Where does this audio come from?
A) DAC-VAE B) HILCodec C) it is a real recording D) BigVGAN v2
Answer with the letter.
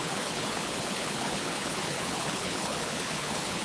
B